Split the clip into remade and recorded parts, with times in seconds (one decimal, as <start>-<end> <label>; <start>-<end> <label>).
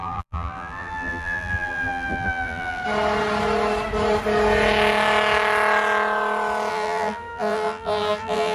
0.0-2.8 remade; 2.8-6.7 recorded; 6.7-8.5 remade